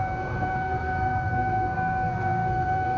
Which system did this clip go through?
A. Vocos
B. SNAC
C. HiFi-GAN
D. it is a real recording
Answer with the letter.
B